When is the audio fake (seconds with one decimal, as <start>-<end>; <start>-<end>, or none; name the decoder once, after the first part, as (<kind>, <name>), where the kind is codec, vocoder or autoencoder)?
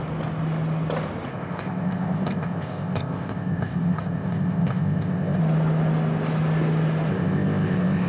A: 1.3-5.4 (codec, ZipCodec); 7.1-8.1